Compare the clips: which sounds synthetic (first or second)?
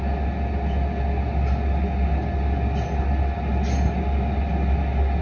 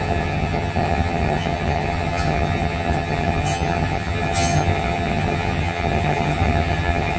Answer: second